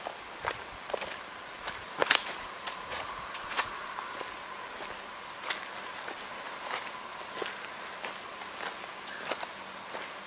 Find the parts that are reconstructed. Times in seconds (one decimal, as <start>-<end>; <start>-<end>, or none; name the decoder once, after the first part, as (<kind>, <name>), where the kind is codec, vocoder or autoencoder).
2.0-3.7 (vocoder, Vocos)